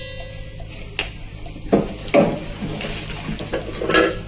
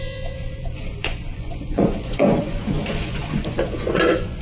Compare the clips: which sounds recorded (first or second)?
first